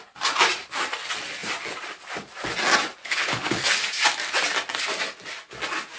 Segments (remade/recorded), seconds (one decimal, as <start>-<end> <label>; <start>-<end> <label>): 0.0-3.0 recorded; 3.0-3.6 remade; 3.6-6.0 recorded